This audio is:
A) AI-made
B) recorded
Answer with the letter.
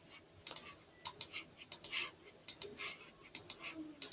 B